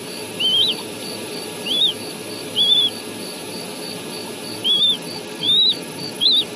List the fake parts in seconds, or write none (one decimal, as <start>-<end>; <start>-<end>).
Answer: 4.6-6.6